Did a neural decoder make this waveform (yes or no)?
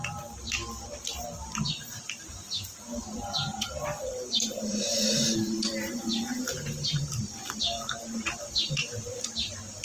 no